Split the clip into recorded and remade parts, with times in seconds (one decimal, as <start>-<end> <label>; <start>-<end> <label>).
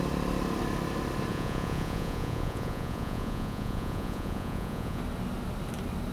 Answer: 0.0-1.3 recorded; 1.3-5.0 remade; 5.0-6.1 recorded